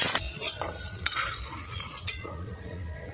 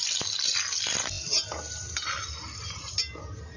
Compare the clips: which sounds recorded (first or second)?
second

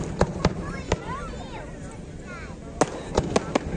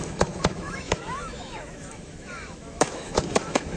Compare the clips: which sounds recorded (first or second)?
first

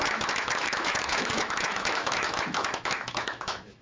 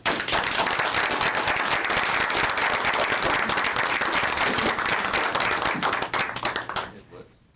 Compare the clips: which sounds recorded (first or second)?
second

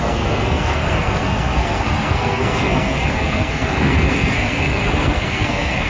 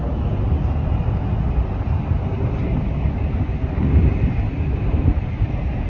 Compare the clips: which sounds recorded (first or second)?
second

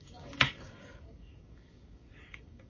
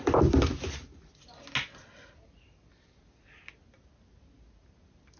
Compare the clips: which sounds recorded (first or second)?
second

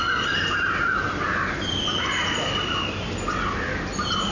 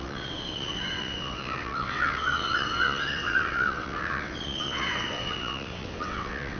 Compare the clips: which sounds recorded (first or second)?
first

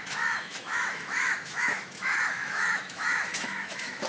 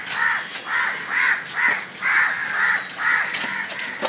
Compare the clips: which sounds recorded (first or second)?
second